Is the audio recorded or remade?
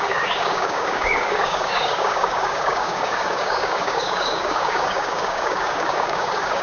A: remade